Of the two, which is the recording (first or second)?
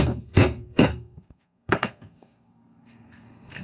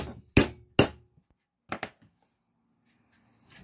second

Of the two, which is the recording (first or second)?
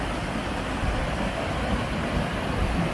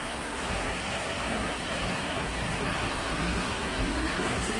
first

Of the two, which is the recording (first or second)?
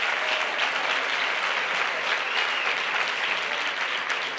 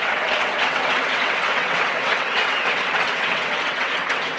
first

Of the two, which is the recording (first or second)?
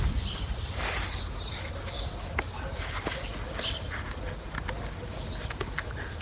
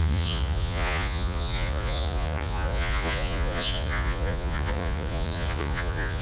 first